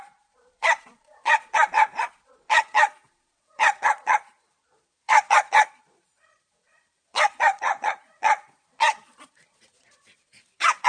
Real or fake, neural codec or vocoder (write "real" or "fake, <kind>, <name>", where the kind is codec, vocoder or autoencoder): fake, vocoder, Vocos